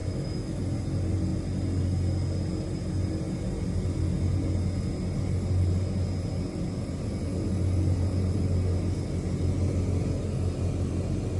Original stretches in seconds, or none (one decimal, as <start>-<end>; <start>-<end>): 0.6-11.4